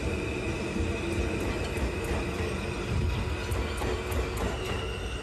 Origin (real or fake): real